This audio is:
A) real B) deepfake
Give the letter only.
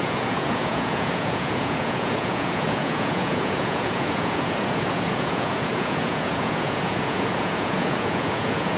B